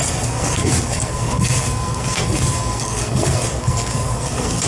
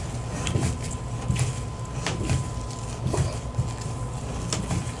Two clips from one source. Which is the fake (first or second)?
first